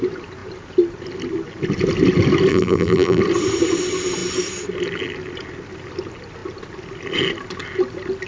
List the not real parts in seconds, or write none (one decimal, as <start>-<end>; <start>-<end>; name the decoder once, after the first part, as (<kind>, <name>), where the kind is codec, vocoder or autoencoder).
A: 2.5-3.2 (vocoder, BigVGAN v2)